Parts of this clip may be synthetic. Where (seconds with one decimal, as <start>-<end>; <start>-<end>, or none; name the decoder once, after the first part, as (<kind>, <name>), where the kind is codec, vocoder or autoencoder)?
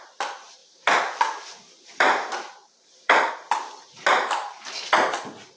0.6-3.3 (vocoder, BigVGAN v2); 4.1-4.7